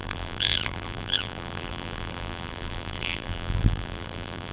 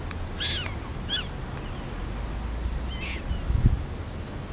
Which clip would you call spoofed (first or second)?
first